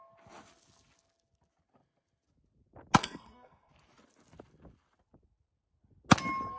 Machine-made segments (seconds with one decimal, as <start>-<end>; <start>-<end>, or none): 3.0-3.7